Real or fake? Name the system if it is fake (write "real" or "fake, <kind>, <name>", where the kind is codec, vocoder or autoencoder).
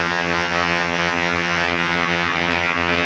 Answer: fake, vocoder, HiFi-GAN